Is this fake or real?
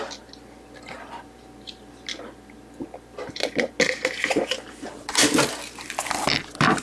real